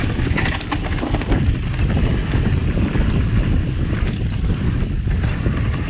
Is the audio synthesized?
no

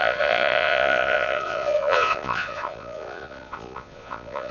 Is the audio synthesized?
yes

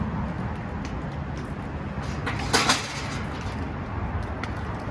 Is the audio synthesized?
no